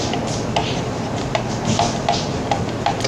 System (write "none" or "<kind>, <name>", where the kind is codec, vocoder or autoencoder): none